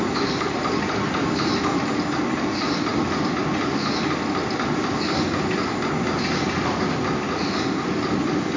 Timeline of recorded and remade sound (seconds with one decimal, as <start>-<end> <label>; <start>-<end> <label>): 0.0-8.6 recorded